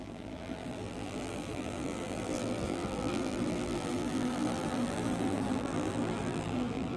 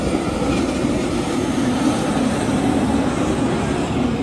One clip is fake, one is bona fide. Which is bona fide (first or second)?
second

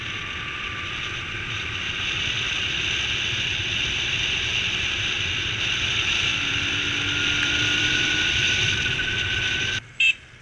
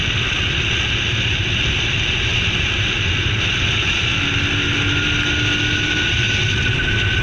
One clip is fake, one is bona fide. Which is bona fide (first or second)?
second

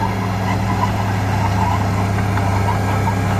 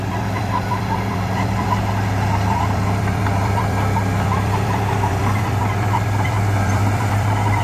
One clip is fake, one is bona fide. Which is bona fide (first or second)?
first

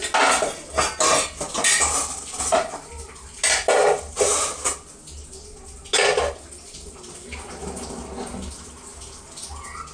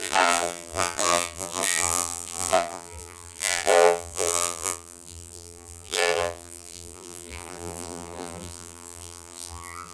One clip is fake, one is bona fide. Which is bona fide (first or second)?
first